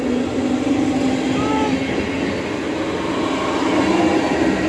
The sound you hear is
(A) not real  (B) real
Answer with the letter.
B